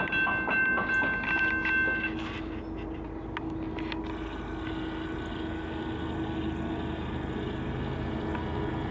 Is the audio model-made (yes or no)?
no